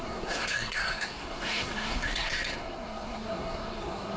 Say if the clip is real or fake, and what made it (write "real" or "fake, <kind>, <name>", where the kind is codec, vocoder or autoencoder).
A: fake, codec, SNAC